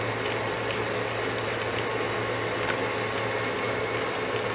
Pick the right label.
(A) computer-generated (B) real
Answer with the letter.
B